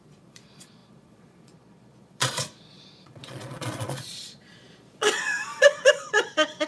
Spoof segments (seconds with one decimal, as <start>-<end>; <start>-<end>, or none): 0.0-6.7